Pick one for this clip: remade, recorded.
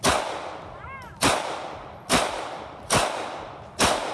recorded